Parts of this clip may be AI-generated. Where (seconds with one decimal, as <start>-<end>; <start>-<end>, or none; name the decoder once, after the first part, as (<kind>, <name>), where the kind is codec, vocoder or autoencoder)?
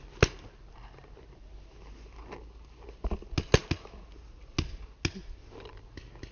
none